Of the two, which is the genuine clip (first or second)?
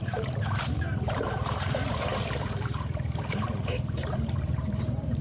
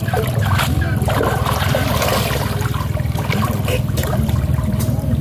second